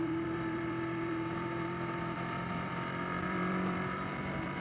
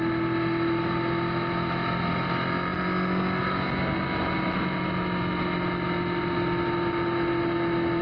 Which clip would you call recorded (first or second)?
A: second